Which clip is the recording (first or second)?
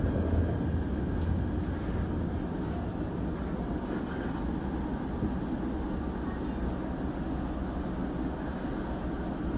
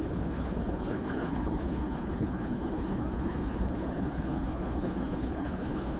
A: first